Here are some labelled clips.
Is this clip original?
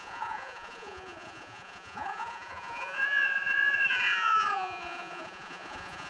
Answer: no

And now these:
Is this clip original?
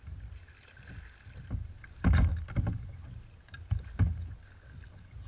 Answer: yes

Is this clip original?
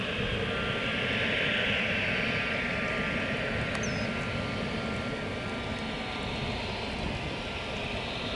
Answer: yes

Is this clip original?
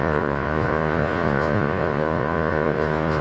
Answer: no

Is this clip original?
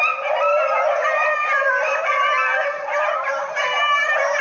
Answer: yes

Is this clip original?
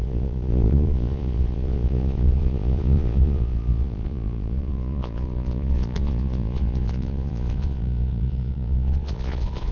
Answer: no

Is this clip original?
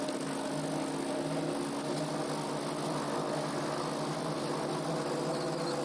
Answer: yes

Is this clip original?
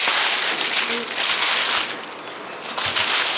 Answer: yes